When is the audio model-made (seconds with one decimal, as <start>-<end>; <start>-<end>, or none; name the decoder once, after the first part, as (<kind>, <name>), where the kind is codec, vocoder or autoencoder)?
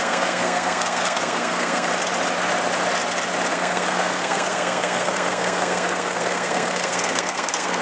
0.0-1.9 (codec, SNAC); 3.5-7.8